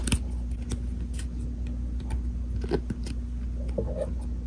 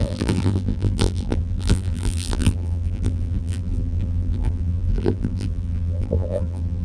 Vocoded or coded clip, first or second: second